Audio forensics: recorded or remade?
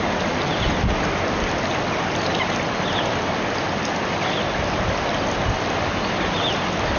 recorded